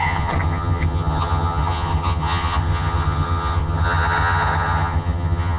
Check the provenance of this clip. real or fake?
fake